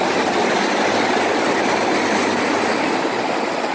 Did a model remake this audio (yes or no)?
no